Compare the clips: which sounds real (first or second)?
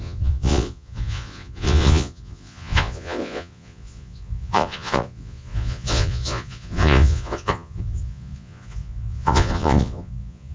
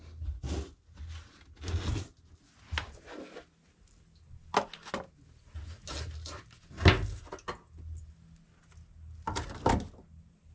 second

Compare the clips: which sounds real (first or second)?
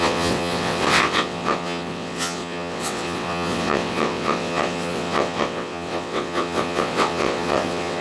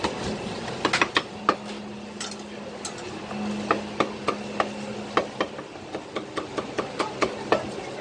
second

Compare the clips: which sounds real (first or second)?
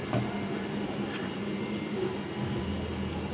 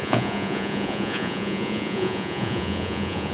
first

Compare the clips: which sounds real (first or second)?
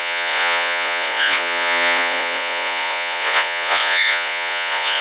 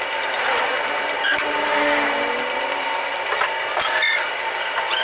second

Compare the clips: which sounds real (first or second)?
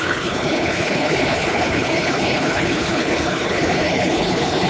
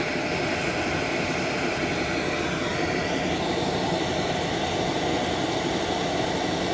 second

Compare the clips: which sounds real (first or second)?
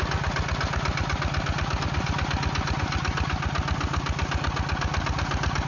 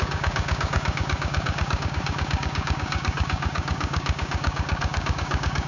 first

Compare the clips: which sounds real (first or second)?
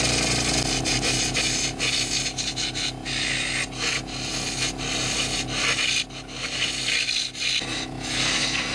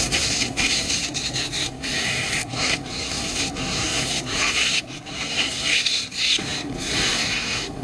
first